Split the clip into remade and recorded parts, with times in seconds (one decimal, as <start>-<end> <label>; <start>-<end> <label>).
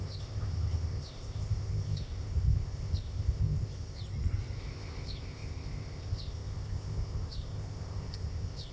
0.0-4.0 remade; 4.0-4.6 recorded; 4.6-8.7 remade